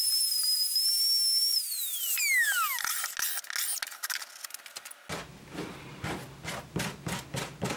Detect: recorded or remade recorded